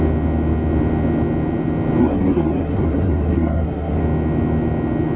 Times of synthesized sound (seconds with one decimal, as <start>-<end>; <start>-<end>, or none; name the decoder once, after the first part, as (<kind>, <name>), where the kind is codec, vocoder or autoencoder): 2.0-4.0 (codec, SNAC)